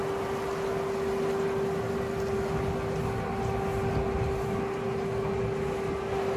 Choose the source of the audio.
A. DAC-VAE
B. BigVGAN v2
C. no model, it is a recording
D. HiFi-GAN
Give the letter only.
C